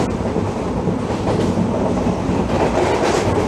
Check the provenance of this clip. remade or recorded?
recorded